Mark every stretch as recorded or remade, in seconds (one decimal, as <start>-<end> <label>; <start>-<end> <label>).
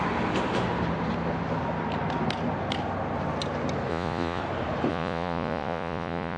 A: 0.0-3.9 recorded; 3.9-4.4 remade; 4.4-4.9 recorded; 4.9-6.4 remade